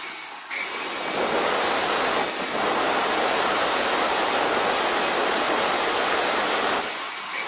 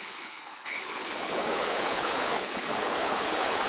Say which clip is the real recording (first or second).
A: first